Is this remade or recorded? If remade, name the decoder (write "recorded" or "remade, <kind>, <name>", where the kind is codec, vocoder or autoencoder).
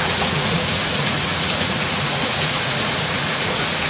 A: remade, vocoder, Vocos